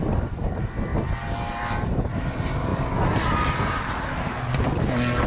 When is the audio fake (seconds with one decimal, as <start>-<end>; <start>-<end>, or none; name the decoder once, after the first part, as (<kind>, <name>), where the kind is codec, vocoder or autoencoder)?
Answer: none